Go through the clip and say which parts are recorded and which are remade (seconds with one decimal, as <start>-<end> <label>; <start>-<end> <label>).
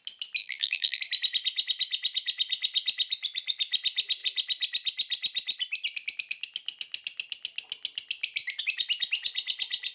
0.0-0.4 recorded; 0.4-1.0 remade; 1.0-9.9 recorded